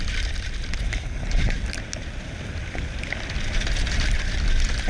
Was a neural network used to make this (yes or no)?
no